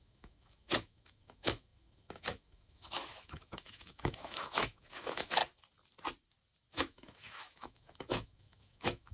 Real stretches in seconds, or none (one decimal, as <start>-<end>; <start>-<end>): 5.4-6.7